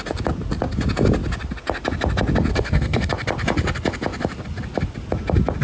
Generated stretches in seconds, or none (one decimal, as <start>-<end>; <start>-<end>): 2.5-3.1